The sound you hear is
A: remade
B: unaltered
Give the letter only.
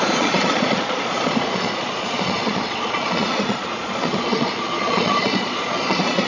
A